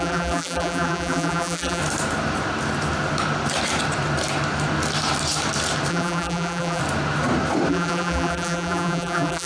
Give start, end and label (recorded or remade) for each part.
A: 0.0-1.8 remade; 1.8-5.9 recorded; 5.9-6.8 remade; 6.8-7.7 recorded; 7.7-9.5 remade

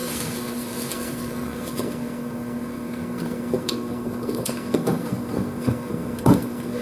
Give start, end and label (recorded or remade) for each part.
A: 0.0-6.8 remade

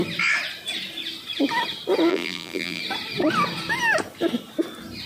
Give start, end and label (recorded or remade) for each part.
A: 0.0-2.1 recorded; 2.1-2.8 remade; 2.8-5.1 recorded

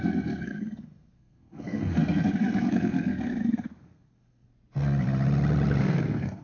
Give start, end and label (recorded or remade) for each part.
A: 0.0-4.5 remade; 4.5-5.8 recorded; 5.8-6.4 remade

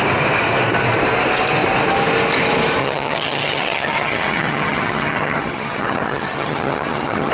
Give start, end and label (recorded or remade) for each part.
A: 0.0-2.8 recorded; 2.8-7.3 remade

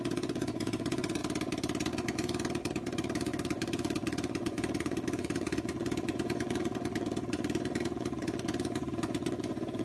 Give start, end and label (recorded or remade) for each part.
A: 0.0-1.2 remade; 1.2-1.9 recorded; 1.9-9.8 remade